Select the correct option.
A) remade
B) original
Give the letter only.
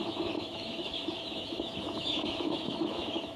A